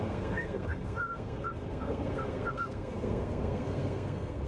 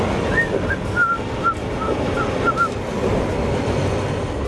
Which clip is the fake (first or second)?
first